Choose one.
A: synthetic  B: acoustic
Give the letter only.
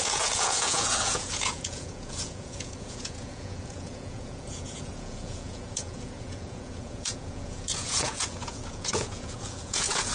A